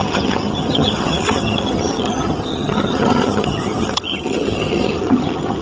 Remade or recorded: remade